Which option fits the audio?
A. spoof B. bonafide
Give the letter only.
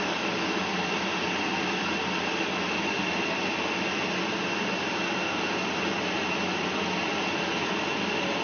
B